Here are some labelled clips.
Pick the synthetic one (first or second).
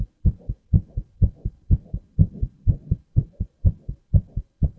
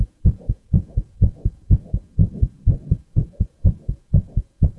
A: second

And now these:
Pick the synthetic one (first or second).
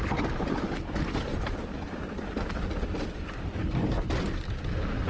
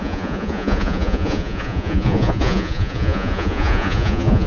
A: second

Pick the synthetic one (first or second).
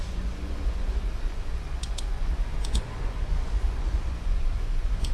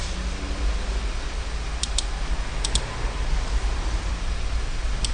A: first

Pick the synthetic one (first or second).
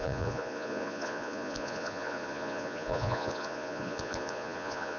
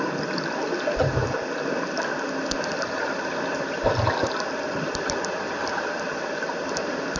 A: first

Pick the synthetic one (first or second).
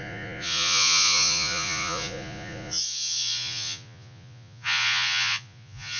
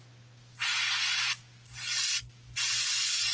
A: first